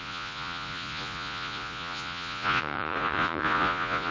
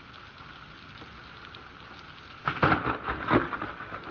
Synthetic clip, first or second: first